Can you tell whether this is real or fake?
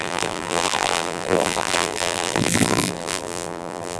fake